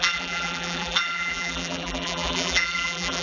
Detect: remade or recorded remade